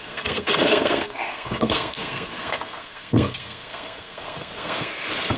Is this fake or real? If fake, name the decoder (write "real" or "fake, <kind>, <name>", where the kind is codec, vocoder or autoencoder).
fake, codec, SNAC